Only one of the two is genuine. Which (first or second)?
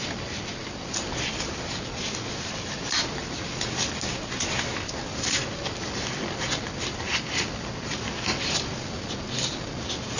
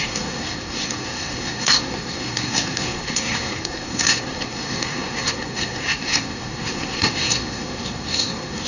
first